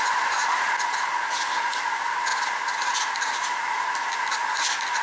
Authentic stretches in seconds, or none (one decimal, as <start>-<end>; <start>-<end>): 0.0-5.0